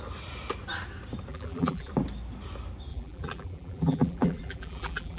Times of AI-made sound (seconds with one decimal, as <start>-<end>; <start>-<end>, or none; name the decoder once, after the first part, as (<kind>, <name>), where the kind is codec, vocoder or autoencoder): 1.3-1.9 (vocoder, BigVGAN v2); 2.9-5.2